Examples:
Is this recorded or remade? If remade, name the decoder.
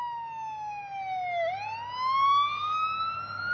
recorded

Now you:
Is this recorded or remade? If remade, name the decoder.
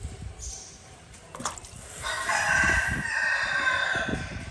recorded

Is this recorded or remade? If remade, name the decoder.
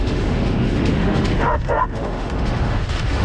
remade, autoencoder, DAC-VAE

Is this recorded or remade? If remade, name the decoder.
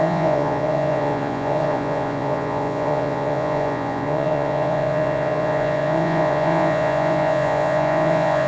remade, vocoder, Vocos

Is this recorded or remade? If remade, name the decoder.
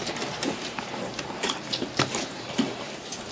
remade, vocoder, BigVGAN v2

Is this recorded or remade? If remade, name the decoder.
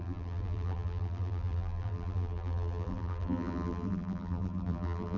remade, vocoder, BigVGAN v2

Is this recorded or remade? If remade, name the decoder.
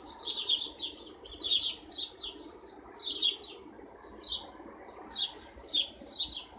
recorded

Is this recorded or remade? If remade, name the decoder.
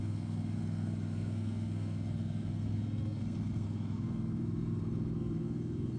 remade, codec, SNAC